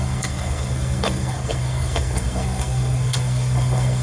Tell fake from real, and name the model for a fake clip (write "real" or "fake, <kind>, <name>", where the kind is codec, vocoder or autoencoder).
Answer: fake, codec, SNAC